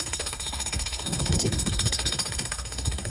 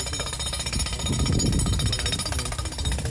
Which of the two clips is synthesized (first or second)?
first